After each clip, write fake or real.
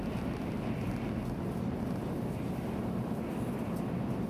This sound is real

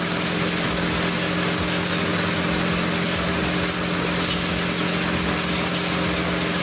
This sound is real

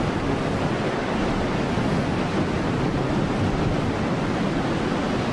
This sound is real